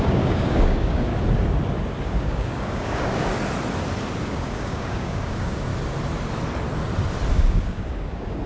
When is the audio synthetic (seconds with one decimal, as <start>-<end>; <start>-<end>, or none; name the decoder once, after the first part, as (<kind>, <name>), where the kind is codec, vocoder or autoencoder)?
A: 0.0-1.1 (codec, DAC); 2.0-3.3; 4.2-5.7; 7.3-8.5